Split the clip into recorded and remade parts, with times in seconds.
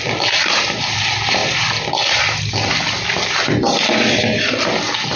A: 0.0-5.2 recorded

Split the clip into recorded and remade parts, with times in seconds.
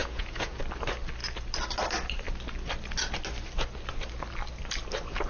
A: 0.0-0.6 remade; 0.6-5.3 recorded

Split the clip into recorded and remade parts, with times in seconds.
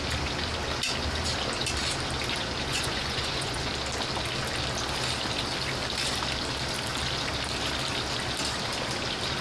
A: 0.0-2.7 recorded; 2.7-3.7 remade; 3.7-9.4 recorded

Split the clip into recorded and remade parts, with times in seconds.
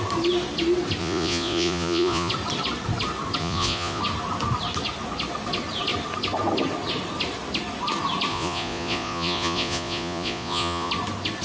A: 0.0-1.0 recorded; 1.0-2.3 remade; 2.3-3.4 recorded; 3.4-4.0 remade; 4.0-8.3 recorded; 8.3-10.9 remade; 10.9-11.4 recorded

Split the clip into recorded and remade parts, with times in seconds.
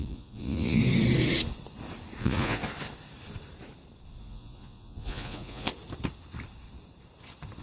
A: 0.0-0.8 remade; 0.8-2.2 recorded; 2.2-2.6 remade; 2.6-4.2 recorded; 4.2-5.7 remade; 5.7-7.6 recorded